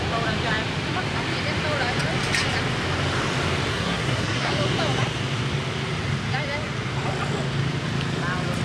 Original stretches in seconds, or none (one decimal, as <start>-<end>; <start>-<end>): 0.0-3.7; 4.5-8.6